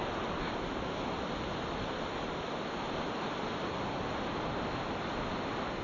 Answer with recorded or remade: recorded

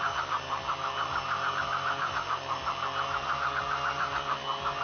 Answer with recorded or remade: recorded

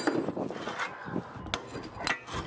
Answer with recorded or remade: recorded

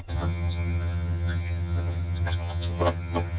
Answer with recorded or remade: remade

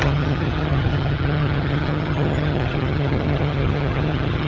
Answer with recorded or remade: remade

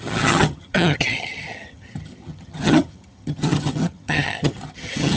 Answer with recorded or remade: remade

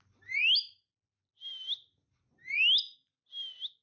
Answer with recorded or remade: recorded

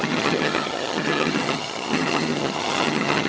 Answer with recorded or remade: remade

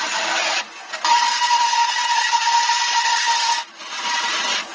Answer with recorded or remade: recorded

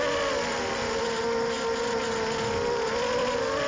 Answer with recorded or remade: recorded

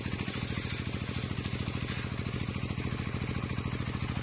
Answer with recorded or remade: recorded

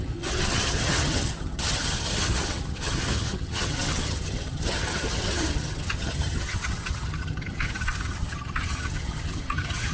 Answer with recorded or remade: remade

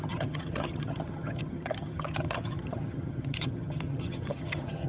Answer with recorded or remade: remade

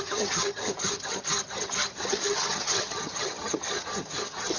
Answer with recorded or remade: remade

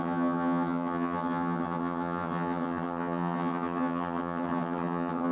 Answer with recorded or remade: remade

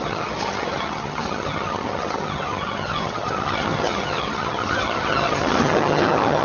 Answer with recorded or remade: remade